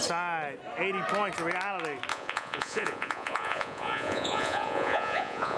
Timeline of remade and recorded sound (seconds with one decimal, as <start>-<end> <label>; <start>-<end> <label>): 0.0-2.1 recorded; 2.1-5.6 remade